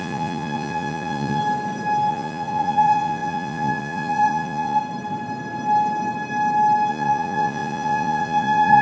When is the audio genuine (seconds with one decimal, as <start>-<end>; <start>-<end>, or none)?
1.4-2.1; 4.8-6.9